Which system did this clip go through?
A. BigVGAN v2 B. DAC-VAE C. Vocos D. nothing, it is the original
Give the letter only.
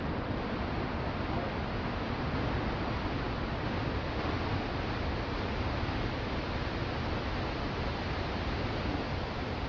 D